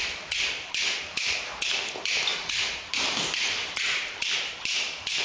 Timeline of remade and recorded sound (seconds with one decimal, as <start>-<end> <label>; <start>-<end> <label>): 0.0-5.2 recorded